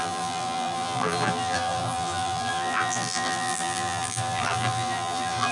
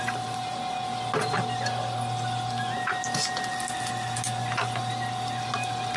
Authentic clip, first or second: second